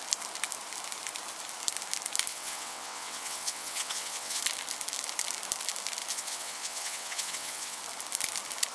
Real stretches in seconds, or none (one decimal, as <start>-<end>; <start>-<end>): 0.0-2.3; 4.4-6.1; 7.8-8.7